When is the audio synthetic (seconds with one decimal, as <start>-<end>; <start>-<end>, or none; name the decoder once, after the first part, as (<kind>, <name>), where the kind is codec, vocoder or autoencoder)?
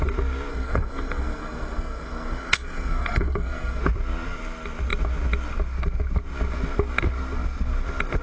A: 0.5-3.8 (codec, SNAC)